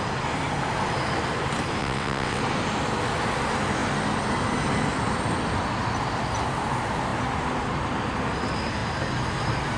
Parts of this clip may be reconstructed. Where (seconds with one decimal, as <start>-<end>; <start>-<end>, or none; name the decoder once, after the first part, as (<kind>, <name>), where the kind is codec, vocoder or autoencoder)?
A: 1.8-2.4 (vocoder, WaveNeXt)